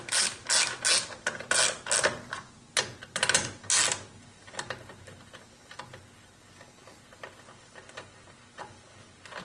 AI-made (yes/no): no